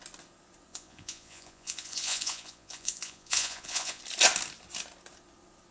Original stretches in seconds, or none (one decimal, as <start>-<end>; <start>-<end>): 0.0-0.7; 4.0-5.7